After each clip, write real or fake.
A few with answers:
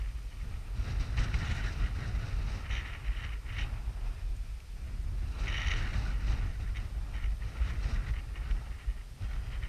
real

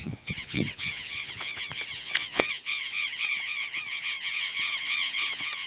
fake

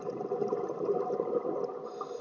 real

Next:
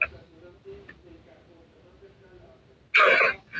real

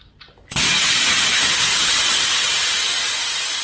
real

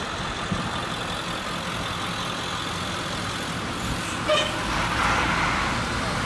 real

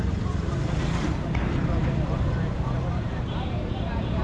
fake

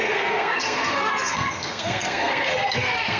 fake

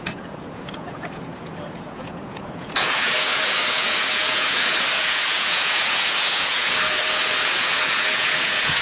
fake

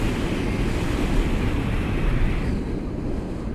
real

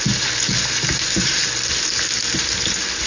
real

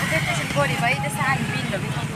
real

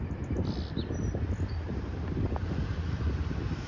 fake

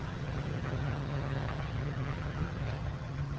fake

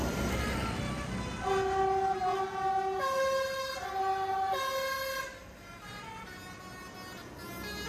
real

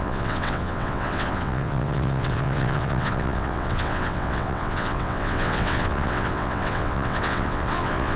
fake